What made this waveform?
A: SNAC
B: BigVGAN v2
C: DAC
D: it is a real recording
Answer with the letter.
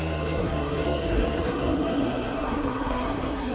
A